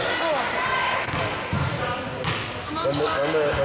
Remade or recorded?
recorded